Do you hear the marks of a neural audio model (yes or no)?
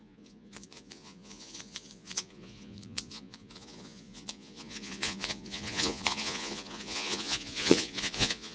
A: yes